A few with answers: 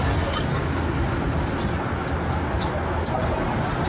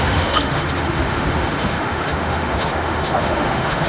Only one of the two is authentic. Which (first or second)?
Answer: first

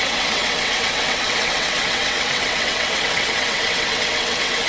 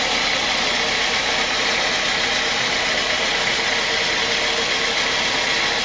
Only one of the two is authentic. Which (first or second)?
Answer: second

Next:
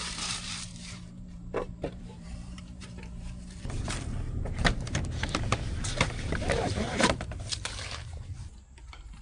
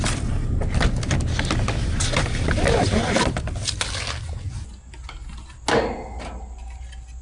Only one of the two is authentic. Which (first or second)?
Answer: second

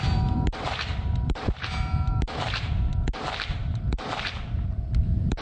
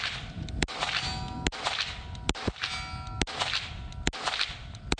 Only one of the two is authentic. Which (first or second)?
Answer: second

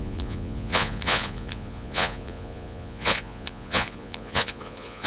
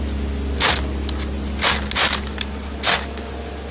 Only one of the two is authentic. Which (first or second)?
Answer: second